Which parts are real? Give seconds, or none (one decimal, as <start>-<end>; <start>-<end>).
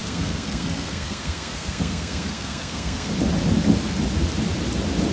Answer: 3.1-5.1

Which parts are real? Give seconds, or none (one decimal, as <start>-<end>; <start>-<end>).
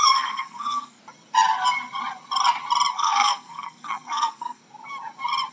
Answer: 1.0-2.9; 4.6-5.5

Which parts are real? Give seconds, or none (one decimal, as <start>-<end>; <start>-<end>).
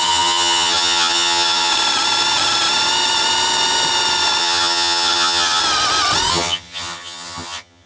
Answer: 1.7-4.4; 5.6-6.3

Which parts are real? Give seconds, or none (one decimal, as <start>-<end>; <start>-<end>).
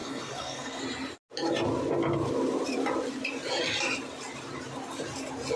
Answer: 0.8-5.6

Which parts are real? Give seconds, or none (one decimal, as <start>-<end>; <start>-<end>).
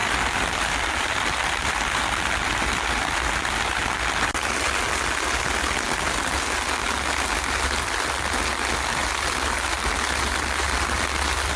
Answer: 0.0-11.6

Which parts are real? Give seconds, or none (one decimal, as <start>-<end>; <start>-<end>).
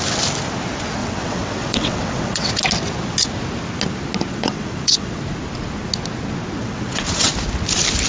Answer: 0.0-1.0; 2.5-4.3; 5.2-6.6; 7.3-8.1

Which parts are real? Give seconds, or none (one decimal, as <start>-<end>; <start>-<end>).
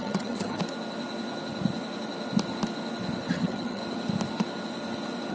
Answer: 0.6-3.3; 3.8-5.3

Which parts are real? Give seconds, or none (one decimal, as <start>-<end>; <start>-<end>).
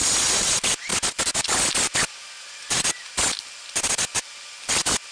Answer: 0.0-5.1